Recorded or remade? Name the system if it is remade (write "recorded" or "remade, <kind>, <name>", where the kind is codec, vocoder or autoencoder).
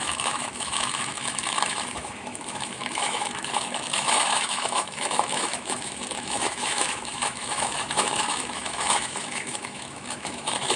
remade, autoencoder, DAC-VAE